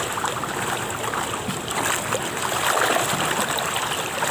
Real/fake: fake